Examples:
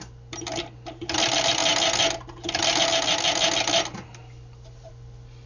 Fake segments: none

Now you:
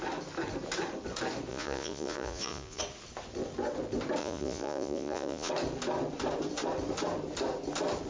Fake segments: 1.5-2.8 (vocoder, Vocos); 4.2-5.5

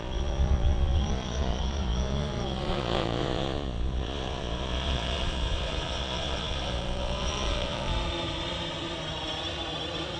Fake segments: 0.0-7.9 (vocoder, Vocos)

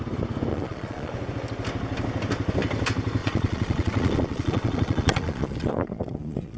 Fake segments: 0.5-1.1 (vocoder, Vocos); 3.2-6.6

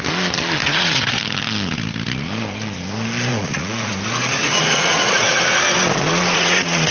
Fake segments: 0.6-1.2 (vocoder, Vocos); 3.3-3.9; 4.4-5.4; 6.1-6.9

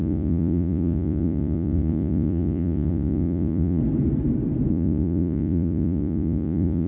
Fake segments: 0.0-3.8 (vocoder, Vocos); 4.7-6.9

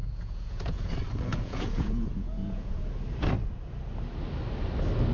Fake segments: 0.0-0.9 (vocoder, Vocos); 1.3-2.8

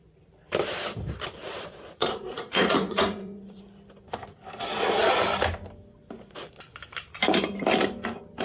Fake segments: 1.4-3.6 (vocoder, Vocos)